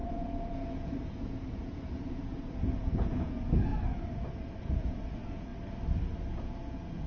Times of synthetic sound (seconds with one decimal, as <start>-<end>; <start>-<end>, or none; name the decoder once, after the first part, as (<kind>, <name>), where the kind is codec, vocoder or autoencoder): 0.0-3.7 (vocoder, Vocos); 4.6-5.5; 6.3-7.1